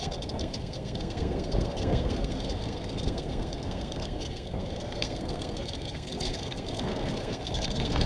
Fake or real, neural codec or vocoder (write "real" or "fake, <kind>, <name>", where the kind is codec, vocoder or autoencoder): fake, codec, SNAC